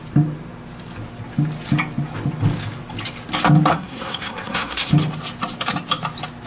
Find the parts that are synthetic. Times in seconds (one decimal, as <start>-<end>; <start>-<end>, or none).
3.7-4.9